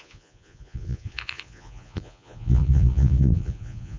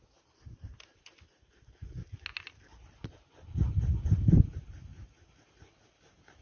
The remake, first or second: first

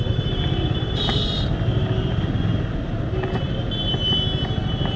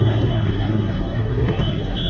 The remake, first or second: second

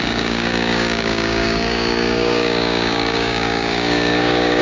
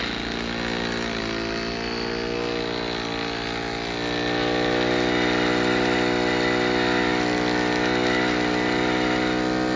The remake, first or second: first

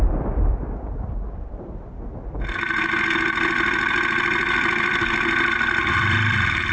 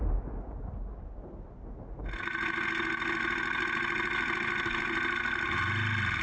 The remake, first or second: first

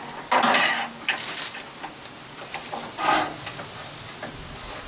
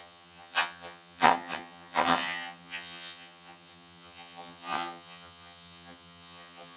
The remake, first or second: second